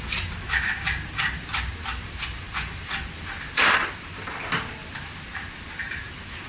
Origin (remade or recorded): remade